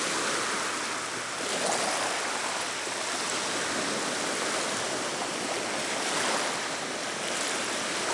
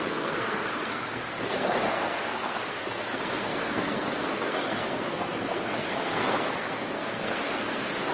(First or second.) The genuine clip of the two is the first